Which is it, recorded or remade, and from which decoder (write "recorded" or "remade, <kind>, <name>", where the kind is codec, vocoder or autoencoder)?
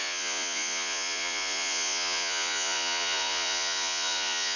remade, vocoder, Vocos